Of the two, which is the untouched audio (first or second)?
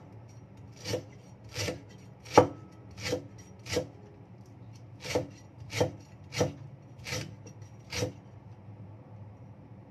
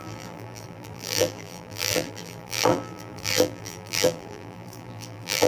first